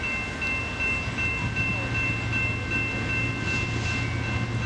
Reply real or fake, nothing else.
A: real